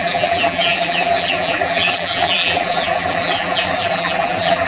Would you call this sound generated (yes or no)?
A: yes